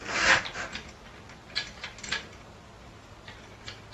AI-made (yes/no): no